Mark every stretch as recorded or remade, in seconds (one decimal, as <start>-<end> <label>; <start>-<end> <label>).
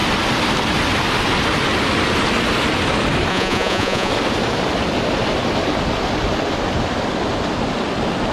0.0-3.3 recorded; 3.3-4.1 remade; 4.1-8.3 recorded